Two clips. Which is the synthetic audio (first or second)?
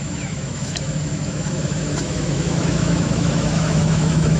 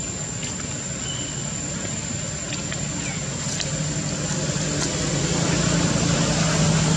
first